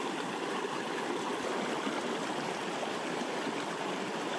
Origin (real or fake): fake